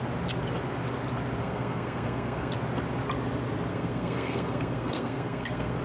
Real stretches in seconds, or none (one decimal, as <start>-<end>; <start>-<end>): 0.0-1.4; 2.5-3.7